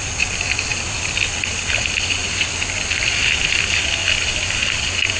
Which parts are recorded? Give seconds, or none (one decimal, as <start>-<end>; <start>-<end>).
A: 0.0-5.2